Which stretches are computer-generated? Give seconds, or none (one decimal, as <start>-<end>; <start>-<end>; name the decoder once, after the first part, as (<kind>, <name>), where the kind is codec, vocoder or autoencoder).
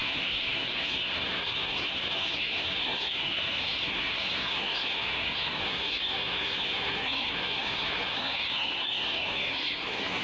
0.0-10.2 (codec, SNAC)